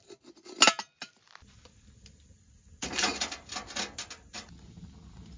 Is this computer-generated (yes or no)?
no